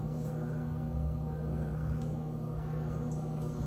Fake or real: fake